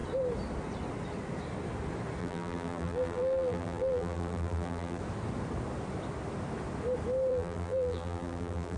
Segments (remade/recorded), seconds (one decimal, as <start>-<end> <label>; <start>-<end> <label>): 0.0-2.2 recorded; 2.2-5.0 remade; 5.0-7.3 recorded; 7.3-8.8 remade